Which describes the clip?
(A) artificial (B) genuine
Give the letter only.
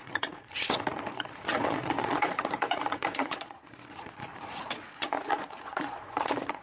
A